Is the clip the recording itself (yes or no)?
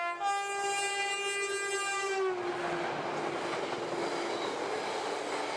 yes